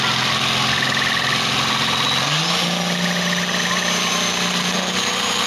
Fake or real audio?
real